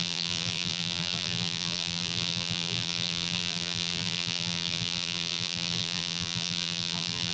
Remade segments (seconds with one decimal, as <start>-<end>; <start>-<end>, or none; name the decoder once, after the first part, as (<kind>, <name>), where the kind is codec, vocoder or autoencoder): 0.0-7.3 (vocoder, BigVGAN v2)